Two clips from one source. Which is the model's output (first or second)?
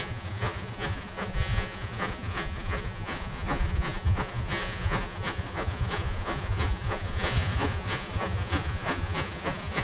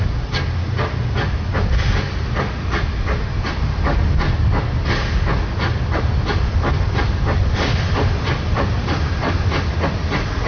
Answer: first